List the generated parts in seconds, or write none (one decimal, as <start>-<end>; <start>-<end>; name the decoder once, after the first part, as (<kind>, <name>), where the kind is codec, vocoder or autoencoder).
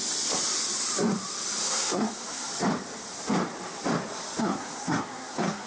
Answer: 1.6-2.5 (codec, SNAC); 4.4-5.7